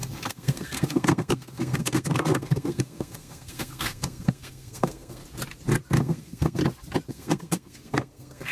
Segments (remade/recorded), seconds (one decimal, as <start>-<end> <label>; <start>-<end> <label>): 0.0-5.2 remade; 5.2-6.0 recorded; 6.0-6.6 remade; 6.6-7.1 recorded; 7.1-8.5 remade